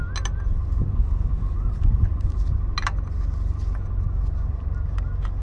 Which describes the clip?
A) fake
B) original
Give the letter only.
B